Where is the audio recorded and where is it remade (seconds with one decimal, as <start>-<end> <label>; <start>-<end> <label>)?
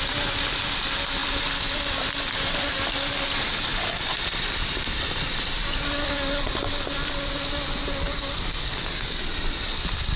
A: 0.0-10.2 recorded